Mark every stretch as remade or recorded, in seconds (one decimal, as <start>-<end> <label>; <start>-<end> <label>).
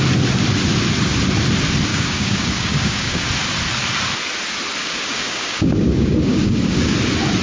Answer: 0.0-1.9 recorded; 1.9-3.3 remade; 3.3-4.8 recorded; 4.8-6.9 remade; 6.9-7.4 recorded